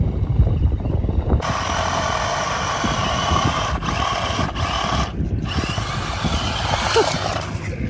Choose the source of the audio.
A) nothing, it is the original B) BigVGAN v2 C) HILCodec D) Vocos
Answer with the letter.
A